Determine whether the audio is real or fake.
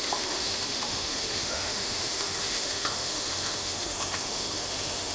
fake